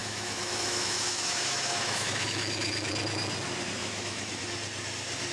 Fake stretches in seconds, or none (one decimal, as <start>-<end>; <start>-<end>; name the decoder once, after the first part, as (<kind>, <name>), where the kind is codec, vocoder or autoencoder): 0.0-2.9 (autoencoder, DAC-VAE); 3.8-4.4